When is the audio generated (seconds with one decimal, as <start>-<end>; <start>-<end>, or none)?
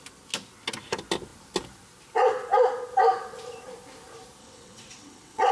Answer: 4.4-5.5